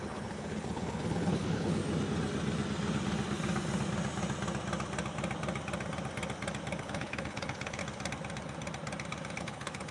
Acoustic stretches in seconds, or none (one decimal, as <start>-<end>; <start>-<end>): 1.8-6.8; 7.8-9.4